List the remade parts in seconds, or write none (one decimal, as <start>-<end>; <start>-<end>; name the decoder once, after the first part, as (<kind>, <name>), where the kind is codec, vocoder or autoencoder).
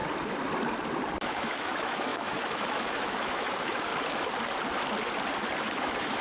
1.2-3.9 (autoencoder, DAC-VAE); 5.6-6.2